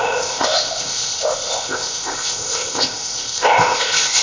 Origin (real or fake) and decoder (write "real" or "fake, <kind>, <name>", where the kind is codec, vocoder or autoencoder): fake, codec, ZipCodec